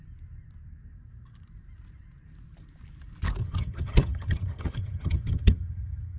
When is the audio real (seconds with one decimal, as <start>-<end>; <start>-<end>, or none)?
0.0-3.4